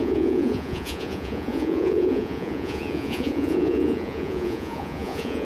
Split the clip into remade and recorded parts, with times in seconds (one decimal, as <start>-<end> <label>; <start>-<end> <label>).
0.0-5.4 remade